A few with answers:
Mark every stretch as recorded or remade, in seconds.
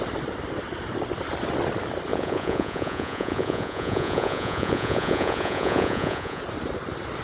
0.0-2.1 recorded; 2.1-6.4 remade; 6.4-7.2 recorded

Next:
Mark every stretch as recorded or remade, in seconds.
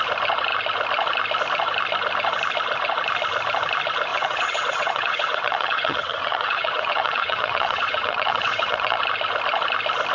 0.0-4.1 recorded; 4.1-9.0 remade; 9.0-10.1 recorded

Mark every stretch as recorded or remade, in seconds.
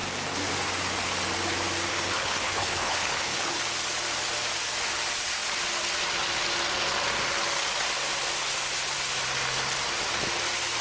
0.0-1.9 recorded; 1.9-3.6 remade; 3.6-10.8 recorded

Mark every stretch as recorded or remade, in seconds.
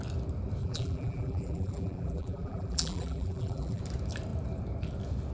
0.0-0.6 recorded; 0.6-3.8 remade; 3.8-5.3 recorded